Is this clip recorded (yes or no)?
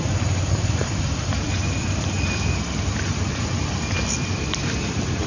no